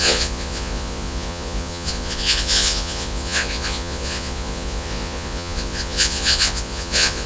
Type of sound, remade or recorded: remade